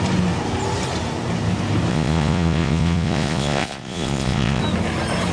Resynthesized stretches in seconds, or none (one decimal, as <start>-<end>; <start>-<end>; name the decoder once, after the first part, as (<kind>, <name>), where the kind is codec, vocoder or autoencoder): 1.9-4.6 (vocoder, Vocos)